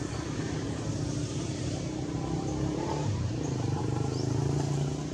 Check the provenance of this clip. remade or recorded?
remade